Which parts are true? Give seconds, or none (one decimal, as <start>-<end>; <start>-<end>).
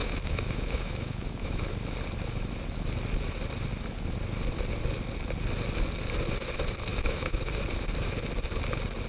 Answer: 1.7-6.9; 7.6-9.1